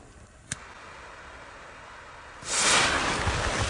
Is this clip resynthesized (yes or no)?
no